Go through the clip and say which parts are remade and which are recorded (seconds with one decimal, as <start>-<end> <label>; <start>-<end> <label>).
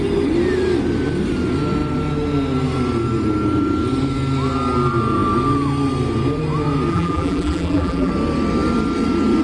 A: 0.0-6.9 recorded; 6.9-8.1 remade; 8.1-9.4 recorded